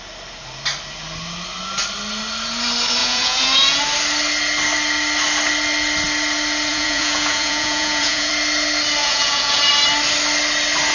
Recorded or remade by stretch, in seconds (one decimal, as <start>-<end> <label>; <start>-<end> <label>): 0.0-3.0 recorded; 3.0-3.8 remade; 3.8-6.7 recorded; 6.7-8.3 remade; 8.3-9.0 recorded; 9.0-9.7 remade; 9.7-10.9 recorded